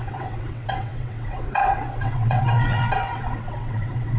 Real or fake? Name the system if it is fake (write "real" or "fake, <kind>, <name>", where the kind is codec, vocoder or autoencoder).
fake, vocoder, WaveNeXt